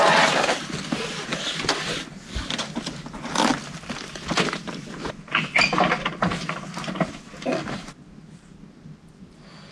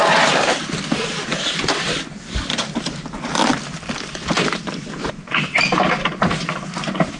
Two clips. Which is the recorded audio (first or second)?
first